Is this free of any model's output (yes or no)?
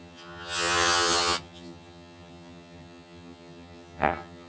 no